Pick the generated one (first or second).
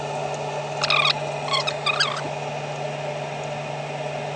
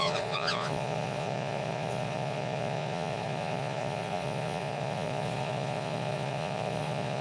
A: second